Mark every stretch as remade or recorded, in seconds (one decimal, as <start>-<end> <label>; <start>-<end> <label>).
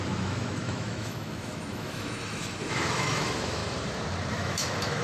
0.0-3.6 remade; 3.6-4.3 recorded; 4.3-5.0 remade